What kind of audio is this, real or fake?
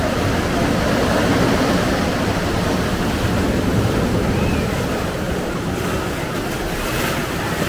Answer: real